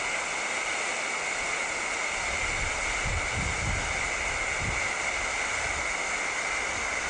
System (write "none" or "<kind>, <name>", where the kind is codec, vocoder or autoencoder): none